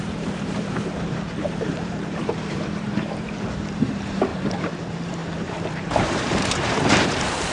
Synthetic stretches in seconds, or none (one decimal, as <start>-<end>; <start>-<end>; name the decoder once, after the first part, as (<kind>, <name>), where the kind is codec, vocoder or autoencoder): 0.0-4.3 (vocoder, BigVGAN v2); 4.8-5.2; 5.7-7.5